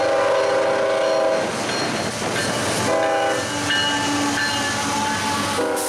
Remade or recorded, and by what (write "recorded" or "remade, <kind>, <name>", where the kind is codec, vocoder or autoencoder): recorded